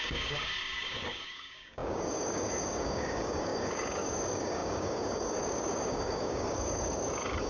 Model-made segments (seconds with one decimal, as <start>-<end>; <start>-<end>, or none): 0.0-7.5

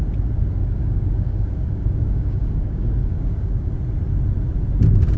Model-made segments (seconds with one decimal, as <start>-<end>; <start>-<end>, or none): 0.6-3.7